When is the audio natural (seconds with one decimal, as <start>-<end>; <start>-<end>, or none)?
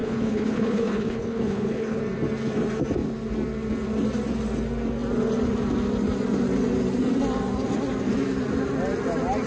2.0-9.5